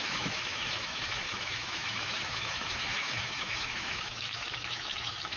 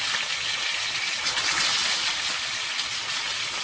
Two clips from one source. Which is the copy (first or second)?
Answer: first